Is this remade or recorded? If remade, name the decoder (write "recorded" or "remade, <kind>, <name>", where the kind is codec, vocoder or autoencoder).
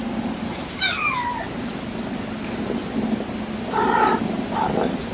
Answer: recorded